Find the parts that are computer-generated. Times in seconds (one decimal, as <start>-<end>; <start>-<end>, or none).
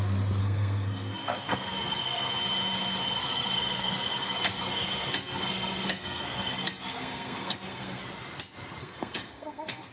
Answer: 0.4-2.3; 3.0-8.0; 8.8-9.9